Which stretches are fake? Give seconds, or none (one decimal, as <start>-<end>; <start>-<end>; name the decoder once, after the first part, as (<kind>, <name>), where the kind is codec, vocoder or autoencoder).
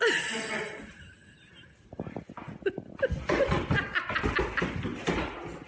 none